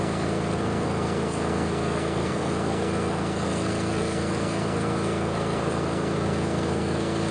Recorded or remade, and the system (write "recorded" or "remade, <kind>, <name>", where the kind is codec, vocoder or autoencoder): remade, codec, SNAC